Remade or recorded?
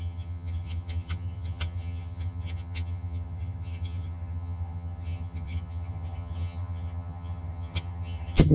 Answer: remade